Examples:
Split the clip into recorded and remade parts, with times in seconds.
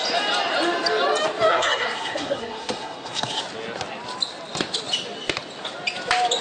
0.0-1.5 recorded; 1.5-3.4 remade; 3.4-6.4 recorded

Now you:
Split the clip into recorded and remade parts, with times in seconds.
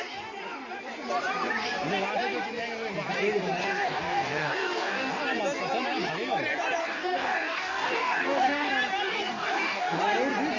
0.0-3.6 recorded; 3.6-5.2 remade; 5.2-6.8 recorded; 6.8-8.7 remade; 8.7-9.3 recorded; 9.3-10.0 remade; 10.0-10.6 recorded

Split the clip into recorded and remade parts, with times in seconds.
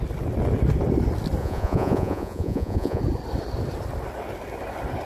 0.0-1.4 recorded; 1.4-3.0 remade; 3.0-5.1 recorded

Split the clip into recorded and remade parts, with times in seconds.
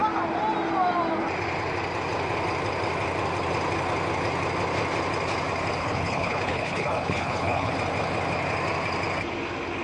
0.0-5.8 recorded; 5.8-7.7 remade; 7.7-9.8 recorded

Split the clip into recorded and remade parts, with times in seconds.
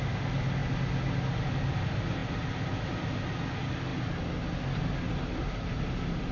0.0-6.3 recorded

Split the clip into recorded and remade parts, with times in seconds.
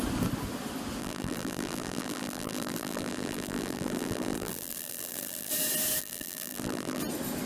0.0-1.0 recorded; 1.0-5.5 remade; 5.5-6.0 recorded; 6.0-7.0 remade; 7.0-7.5 recorded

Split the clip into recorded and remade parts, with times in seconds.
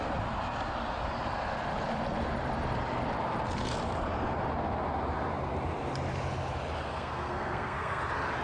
0.0-6.9 recorded; 6.9-8.0 remade; 8.0-8.4 recorded